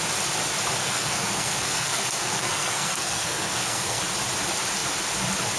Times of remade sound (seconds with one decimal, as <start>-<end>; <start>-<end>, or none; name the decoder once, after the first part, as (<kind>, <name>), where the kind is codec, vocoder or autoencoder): 0.8-4.0 (codec, SNAC)